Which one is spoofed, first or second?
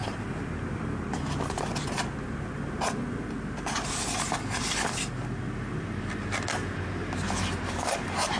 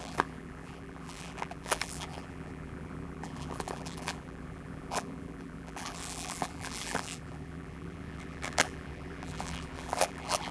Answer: second